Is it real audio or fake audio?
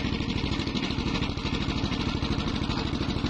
real